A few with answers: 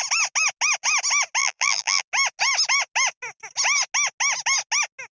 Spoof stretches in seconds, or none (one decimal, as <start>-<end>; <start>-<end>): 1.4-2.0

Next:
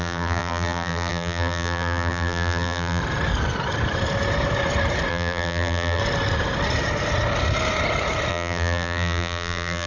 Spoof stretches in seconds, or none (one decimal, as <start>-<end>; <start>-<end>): 0.0-3.0; 5.1-6.0; 8.3-9.9

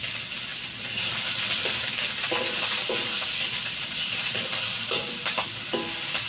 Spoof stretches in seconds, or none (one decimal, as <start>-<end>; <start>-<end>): none

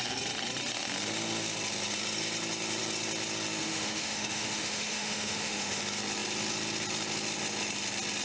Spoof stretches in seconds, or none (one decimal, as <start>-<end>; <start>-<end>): 3.6-5.8

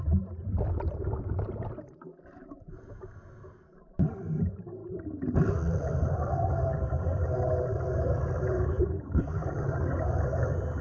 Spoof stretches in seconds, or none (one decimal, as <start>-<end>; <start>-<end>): none

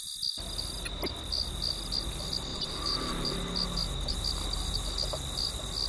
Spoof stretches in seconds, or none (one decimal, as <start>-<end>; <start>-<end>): 2.5-3.3

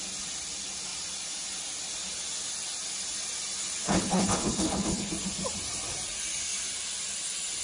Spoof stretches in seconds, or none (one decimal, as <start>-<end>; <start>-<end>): 3.8-5.1

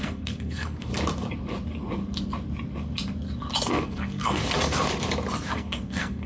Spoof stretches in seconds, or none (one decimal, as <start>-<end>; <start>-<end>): 0.0-0.9; 3.7-4.4; 5.5-6.3